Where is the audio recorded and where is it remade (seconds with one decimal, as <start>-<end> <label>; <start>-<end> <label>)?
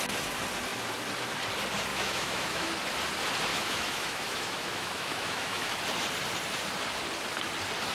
0.0-1.9 recorded; 1.9-2.7 remade; 2.7-3.5 recorded; 3.5-5.8 remade; 5.8-7.9 recorded